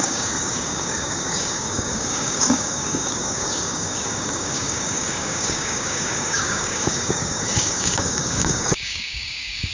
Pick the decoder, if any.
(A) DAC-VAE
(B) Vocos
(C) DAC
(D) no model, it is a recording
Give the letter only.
C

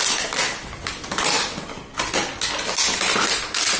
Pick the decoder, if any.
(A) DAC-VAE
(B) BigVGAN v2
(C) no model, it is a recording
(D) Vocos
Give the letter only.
C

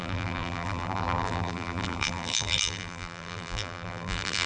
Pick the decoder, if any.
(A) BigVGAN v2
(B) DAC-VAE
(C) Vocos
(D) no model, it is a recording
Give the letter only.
A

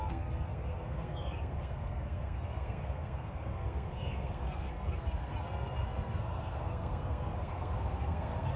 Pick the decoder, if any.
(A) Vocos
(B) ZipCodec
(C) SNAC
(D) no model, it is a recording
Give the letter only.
C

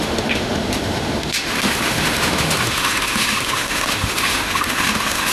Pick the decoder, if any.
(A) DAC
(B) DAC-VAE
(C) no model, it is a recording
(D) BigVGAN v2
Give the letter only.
B